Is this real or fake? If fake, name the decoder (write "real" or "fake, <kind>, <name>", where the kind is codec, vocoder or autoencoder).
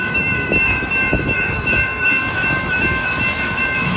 fake, autoencoder, DAC-VAE